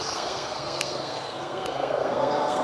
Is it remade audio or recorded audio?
remade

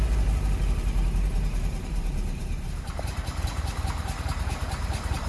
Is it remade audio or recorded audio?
remade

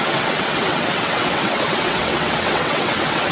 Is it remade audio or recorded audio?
remade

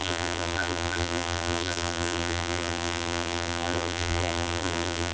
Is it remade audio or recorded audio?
remade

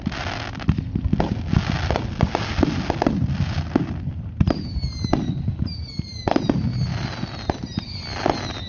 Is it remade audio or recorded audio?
recorded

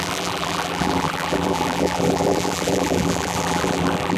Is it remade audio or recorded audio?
remade